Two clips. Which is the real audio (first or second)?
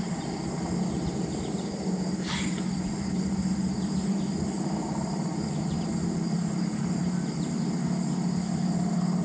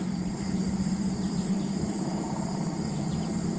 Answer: first